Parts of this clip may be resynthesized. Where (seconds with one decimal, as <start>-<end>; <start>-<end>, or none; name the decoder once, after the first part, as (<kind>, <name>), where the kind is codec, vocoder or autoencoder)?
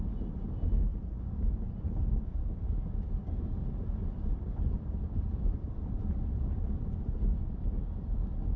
0.9-1.5 (vocoder, BigVGAN v2); 2.3-2.8; 4.0-7.6